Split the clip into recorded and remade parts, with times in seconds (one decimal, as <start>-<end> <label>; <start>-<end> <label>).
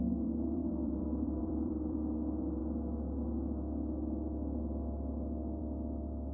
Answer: 0.0-2.6 remade; 2.6-5.6 recorded; 5.6-6.3 remade